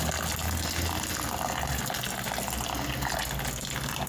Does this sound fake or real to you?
real